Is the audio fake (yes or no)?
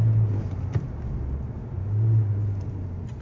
no